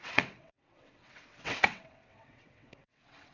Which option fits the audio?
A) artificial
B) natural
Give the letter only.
A